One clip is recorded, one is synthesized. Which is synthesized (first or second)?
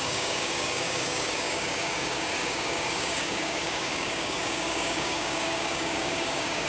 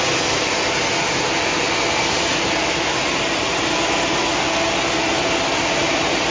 first